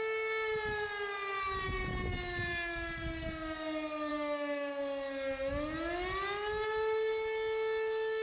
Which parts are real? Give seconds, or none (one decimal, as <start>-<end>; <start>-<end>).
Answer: 0.0-4.1; 4.8-8.2